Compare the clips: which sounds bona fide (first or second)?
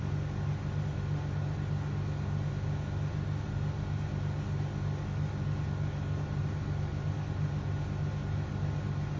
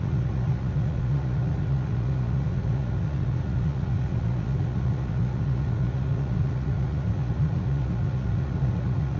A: first